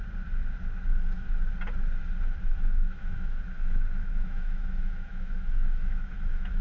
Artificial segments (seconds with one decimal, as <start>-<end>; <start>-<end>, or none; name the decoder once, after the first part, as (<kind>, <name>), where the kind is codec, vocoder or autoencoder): 2.5-6.6 (autoencoder, DAC-VAE)